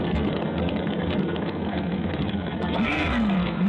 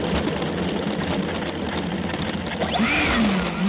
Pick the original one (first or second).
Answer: second